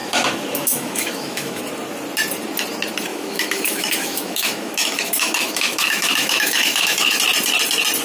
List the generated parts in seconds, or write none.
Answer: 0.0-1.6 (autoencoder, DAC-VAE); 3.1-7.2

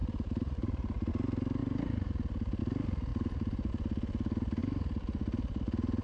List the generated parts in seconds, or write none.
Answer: 0.0-1.1 (vocoder, BigVGAN v2); 1.6-2.6; 3.1-3.7

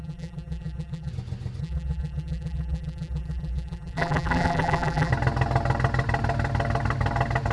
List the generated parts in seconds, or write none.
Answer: 0.0-1.1 (vocoder, BigVGAN v2); 1.6-5.1

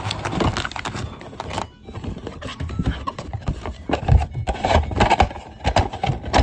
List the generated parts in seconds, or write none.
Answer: 2.5-4.0 (vocoder, BigVGAN v2); 4.6-5.2

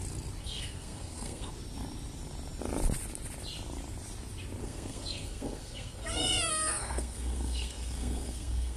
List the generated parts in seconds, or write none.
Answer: 0.4-1.5 (codec, SNAC); 4.6-8.8